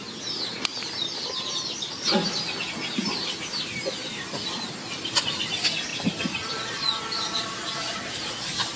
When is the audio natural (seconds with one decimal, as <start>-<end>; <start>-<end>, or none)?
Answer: none